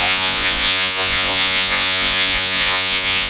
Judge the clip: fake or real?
fake